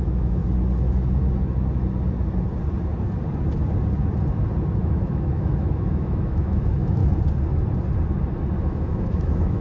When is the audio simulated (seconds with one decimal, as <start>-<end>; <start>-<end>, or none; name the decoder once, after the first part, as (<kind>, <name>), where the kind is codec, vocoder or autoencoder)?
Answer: 0.0-0.4 (autoencoder, DAC-VAE); 4.7-7.0; 8.6-9.6